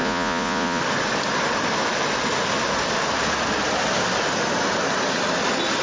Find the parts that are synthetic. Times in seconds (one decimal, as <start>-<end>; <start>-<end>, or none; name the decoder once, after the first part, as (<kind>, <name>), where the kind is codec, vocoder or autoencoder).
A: 0.0-0.8 (vocoder, Vocos)